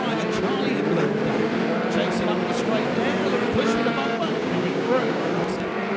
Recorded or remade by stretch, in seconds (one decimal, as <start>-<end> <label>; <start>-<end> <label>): 0.0-4.4 recorded; 4.4-5.3 remade; 5.3-6.0 recorded

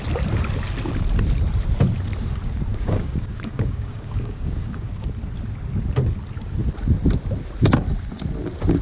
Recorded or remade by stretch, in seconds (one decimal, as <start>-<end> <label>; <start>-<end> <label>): 0.0-2.7 recorded; 2.7-5.1 remade; 5.1-8.8 recorded

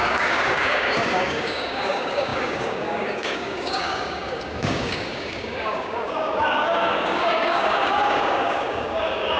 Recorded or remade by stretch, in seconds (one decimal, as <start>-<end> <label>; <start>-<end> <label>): 0.0-9.4 remade

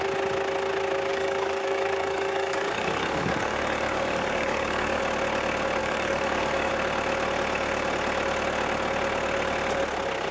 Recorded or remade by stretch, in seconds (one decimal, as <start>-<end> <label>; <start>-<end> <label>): 0.0-1.1 recorded; 1.1-5.0 remade; 5.0-5.8 recorded; 5.8-6.7 remade; 6.7-10.3 recorded

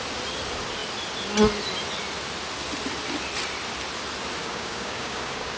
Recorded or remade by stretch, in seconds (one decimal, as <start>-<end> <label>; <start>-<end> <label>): 0.0-4.4 recorded; 4.4-5.6 remade